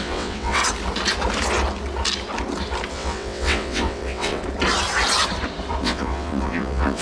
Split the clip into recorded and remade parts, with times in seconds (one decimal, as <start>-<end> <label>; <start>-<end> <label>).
0.0-0.6 remade; 0.6-2.9 recorded; 2.9-4.4 remade; 4.4-5.8 recorded; 5.8-7.0 remade